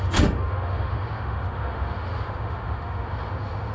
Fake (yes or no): yes